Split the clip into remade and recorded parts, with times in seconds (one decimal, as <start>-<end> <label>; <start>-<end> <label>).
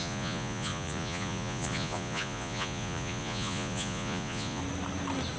0.0-4.6 remade; 4.6-5.4 recorded